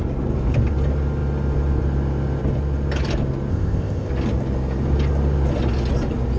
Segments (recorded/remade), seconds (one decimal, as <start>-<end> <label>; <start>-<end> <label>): 0.0-3.5 recorded; 3.5-4.1 remade; 4.1-6.4 recorded